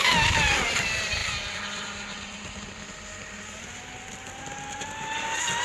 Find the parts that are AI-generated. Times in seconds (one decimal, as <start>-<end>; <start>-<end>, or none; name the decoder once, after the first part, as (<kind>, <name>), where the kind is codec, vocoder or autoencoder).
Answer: none